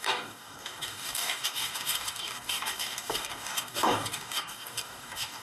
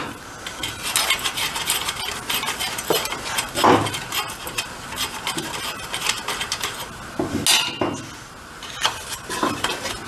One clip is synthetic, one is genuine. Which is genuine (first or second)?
second